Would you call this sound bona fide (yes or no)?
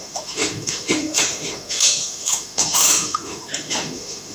no